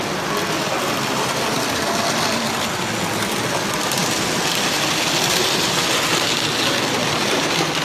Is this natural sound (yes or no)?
yes